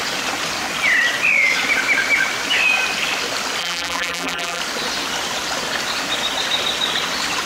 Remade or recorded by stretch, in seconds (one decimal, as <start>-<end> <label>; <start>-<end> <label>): 0.0-3.6 recorded; 3.6-4.6 remade; 4.6-7.5 recorded